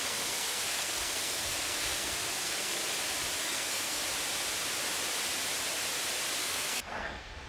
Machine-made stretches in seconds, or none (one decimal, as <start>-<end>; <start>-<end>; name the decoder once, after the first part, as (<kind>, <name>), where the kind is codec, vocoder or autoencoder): 0.0-2.8 (codec, SNAC); 3.4-4.0; 6.4-7.5